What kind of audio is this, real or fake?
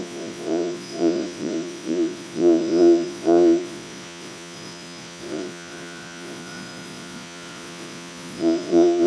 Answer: fake